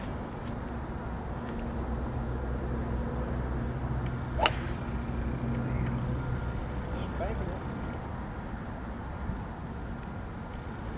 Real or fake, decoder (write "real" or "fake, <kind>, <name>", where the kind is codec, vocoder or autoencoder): real